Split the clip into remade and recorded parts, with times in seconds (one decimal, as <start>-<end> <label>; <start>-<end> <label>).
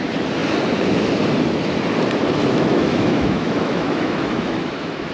0.0-2.4 recorded; 2.4-5.1 remade